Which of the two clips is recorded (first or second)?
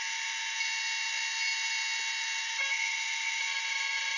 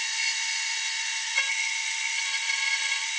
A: first